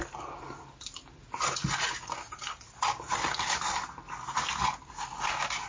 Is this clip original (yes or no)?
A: yes